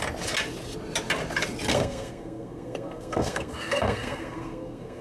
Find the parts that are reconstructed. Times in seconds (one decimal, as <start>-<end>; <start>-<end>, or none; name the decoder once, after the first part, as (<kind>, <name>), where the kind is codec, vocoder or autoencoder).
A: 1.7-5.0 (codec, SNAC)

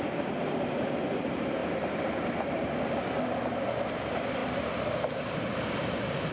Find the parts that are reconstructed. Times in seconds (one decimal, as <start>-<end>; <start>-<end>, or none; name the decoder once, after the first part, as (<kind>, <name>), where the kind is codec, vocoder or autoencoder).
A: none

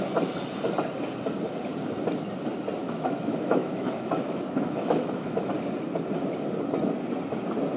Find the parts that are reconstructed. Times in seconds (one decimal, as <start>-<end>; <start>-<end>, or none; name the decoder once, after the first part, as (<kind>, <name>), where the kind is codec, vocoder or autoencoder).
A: 2.8-5.5 (autoencoder, DAC-VAE)

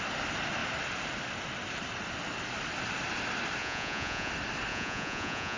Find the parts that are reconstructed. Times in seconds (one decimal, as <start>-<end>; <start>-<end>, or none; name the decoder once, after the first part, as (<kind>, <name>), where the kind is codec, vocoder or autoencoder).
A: 3.6-4.3 (vocoder, Vocos); 4.7-5.6